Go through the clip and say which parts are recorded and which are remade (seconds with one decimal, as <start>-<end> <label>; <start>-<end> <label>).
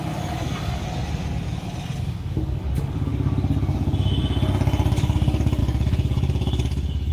0.0-0.8 remade; 0.8-2.0 recorded; 2.0-3.1 remade; 3.1-5.0 recorded; 5.0-7.1 remade